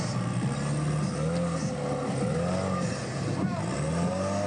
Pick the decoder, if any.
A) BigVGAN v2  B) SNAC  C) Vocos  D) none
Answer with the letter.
D